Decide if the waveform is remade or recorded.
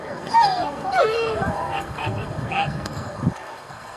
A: remade